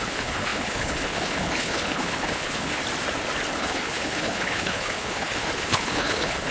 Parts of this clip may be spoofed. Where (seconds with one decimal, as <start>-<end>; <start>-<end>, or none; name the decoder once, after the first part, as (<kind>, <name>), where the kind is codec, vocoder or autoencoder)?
0.0-2.8 (codec, HILCodec); 3.5-6.5